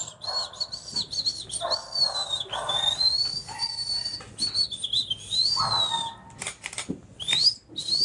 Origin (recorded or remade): recorded